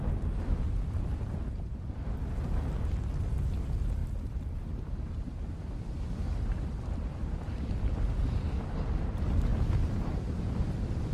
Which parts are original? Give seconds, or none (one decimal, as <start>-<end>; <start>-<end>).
0.0-1.1; 2.5-4.0; 8.6-9.5; 10.2-11.1